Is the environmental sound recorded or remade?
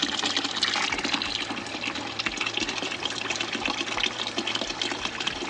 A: recorded